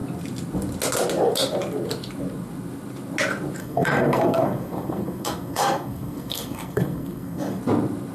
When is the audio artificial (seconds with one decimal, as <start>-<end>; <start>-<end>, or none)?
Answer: 3.6-7.6